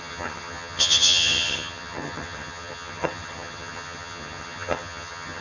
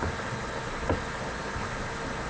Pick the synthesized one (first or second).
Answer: first